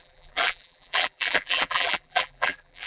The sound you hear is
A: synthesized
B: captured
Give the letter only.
A